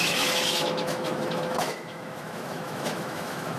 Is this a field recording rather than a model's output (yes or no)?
no